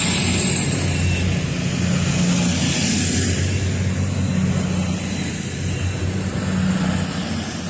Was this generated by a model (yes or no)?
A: no